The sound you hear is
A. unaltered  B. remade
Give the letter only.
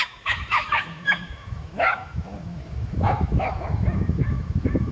B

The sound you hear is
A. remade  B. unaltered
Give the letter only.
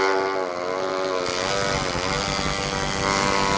B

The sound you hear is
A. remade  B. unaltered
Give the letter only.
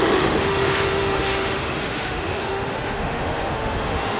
A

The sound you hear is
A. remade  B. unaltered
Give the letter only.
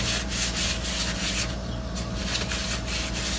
B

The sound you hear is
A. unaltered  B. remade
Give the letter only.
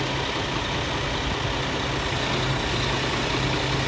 A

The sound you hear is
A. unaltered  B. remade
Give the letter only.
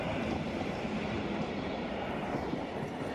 A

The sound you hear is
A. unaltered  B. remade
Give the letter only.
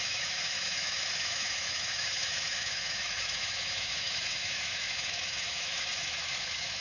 B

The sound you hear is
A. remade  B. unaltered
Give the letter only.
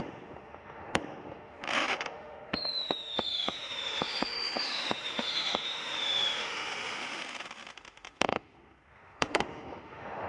A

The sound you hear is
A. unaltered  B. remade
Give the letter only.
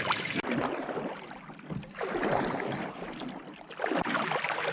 A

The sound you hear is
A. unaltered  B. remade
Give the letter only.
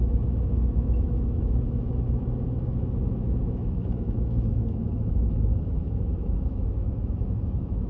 B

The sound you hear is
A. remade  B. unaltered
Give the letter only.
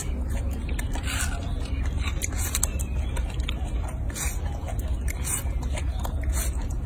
B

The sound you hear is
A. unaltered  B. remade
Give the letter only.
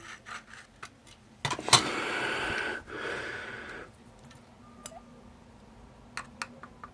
A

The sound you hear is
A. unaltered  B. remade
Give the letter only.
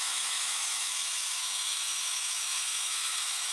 B